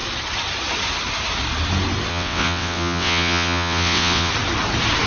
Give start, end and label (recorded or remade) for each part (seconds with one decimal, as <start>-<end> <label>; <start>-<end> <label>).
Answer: 0.0-2.1 recorded; 2.1-4.3 remade; 4.3-5.1 recorded